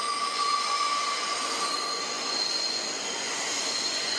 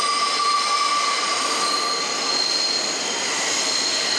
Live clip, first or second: second